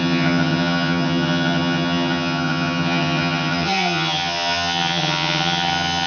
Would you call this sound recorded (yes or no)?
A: no